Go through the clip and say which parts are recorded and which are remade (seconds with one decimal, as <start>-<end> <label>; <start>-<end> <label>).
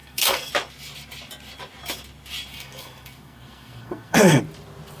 0.0-0.5 remade; 0.5-2.5 recorded; 2.5-4.4 remade; 4.4-5.0 recorded